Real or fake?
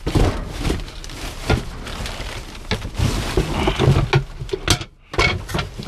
real